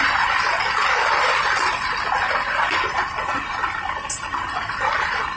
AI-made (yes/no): no